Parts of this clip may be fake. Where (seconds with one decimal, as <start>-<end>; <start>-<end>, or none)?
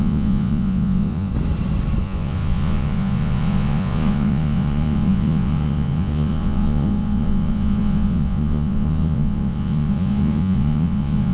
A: 0.0-1.3; 2.0-11.3